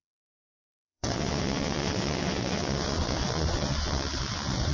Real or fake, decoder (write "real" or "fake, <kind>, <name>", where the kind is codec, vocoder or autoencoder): fake, vocoder, WaveNeXt